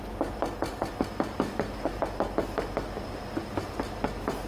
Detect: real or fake real